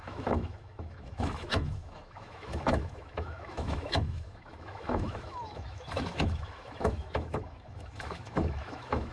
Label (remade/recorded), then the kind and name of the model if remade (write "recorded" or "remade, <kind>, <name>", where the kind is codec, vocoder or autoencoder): remade, autoencoder, DAC-VAE